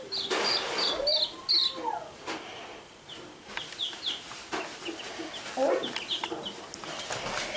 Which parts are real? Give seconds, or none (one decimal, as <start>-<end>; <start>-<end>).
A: 0.0-7.6